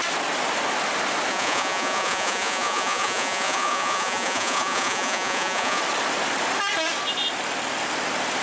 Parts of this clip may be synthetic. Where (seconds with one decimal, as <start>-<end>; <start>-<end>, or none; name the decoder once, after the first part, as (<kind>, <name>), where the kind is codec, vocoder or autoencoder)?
1.3-5.8 (vocoder, Vocos)